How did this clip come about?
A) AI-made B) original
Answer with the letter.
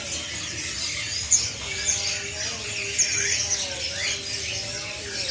B